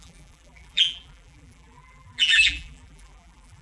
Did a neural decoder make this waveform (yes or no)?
yes